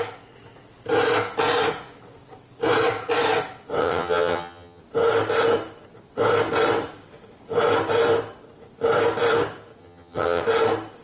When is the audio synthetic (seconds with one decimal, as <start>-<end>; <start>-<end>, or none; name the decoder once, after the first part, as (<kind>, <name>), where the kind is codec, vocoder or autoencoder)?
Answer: 3.8-4.8 (vocoder, HiFi-GAN); 9.8-10.4